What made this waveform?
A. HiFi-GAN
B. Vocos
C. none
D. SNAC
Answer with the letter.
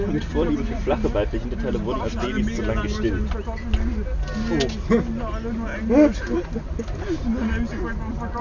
C